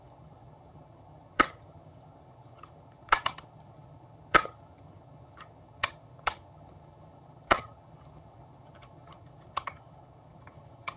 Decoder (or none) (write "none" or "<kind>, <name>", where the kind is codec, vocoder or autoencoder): vocoder, HiFi-GAN